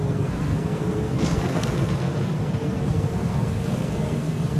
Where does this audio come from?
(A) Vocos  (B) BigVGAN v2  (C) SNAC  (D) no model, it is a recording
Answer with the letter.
C